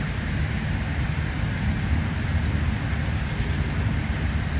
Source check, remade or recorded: recorded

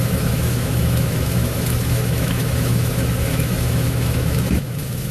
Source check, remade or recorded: remade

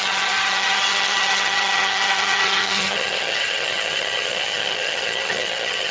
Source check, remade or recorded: remade